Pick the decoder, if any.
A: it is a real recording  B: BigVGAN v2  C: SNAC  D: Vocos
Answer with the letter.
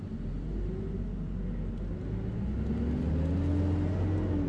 A